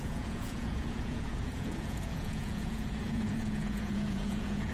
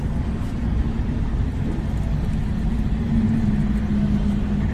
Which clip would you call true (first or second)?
second